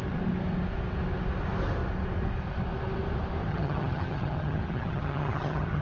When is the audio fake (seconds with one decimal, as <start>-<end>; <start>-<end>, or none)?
3.5-5.8